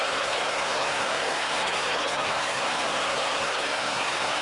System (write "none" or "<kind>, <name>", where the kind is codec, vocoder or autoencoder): codec, SNAC